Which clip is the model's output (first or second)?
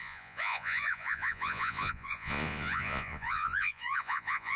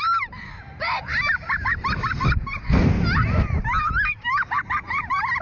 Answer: first